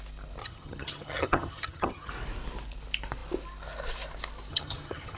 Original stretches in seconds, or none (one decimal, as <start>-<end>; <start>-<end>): 0.0-0.4; 2.1-4.5